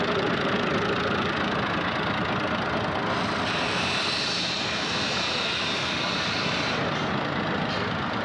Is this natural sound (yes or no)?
yes